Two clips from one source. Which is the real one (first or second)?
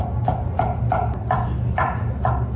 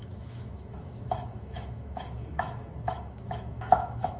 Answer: first